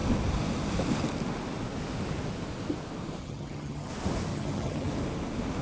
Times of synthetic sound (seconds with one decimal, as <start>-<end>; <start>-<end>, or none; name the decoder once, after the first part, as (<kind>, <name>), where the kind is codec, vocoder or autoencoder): 3.2-3.9 (vocoder, HiFi-GAN); 4.3-4.9